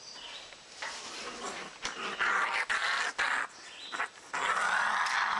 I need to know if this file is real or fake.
real